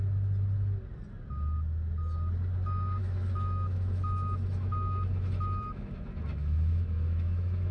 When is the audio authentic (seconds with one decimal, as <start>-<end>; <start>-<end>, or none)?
0.0-3.0

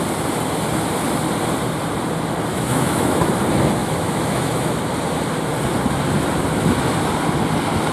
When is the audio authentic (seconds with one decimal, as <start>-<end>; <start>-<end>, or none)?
0.0-2.5; 3.3-3.8; 4.8-7.9